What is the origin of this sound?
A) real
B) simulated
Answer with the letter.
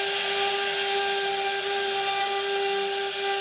A